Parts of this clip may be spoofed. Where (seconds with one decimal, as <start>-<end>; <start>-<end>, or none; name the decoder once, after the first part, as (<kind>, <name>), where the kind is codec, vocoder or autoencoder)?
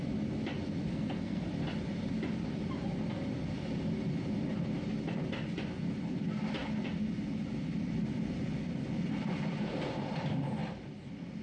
0.9-1.4 (codec, SNAC)